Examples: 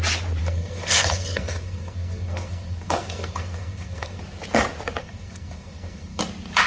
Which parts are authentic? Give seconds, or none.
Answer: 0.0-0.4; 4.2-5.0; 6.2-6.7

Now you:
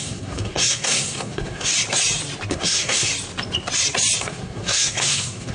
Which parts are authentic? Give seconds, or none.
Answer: 1.7-2.5; 3.1-4.2